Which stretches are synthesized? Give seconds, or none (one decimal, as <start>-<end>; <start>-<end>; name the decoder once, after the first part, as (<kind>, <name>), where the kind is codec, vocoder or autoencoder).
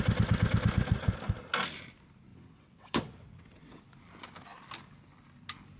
2.3-3.8 (vocoder, WaveNeXt)